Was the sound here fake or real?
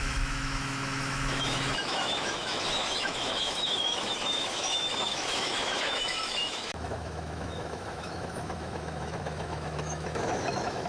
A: fake